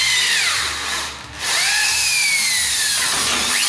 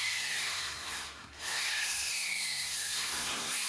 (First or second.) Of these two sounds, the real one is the first